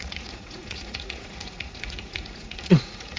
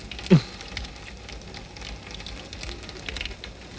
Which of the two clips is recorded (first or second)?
second